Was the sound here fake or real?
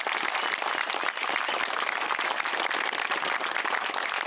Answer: real